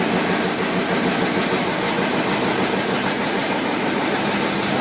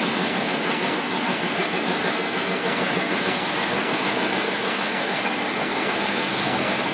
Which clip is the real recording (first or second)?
first